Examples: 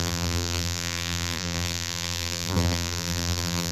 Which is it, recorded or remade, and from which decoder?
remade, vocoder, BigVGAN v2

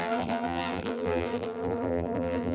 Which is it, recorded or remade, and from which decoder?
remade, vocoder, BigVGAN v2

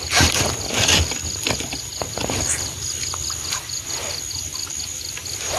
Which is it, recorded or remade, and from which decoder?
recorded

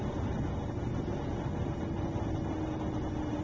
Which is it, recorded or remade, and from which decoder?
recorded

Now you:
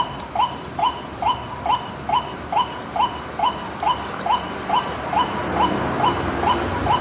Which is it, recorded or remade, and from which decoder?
recorded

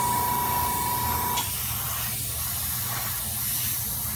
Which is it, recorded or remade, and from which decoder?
recorded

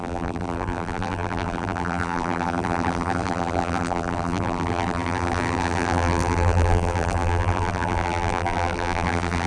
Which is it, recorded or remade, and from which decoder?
remade, vocoder, BigVGAN v2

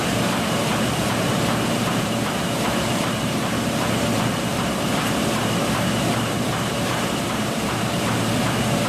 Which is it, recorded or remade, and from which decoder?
remade, vocoder, BigVGAN v2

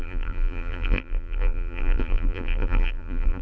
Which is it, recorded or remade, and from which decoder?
remade, vocoder, BigVGAN v2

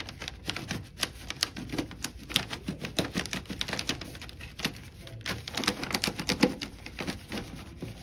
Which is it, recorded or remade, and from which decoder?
recorded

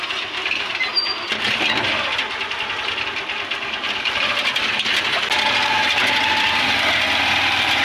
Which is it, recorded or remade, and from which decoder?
recorded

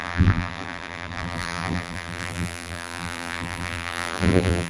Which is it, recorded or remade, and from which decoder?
remade, vocoder, BigVGAN v2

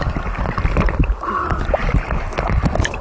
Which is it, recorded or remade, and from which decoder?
recorded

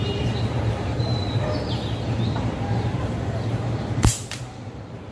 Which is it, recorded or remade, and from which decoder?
remade, vocoder, BigVGAN v2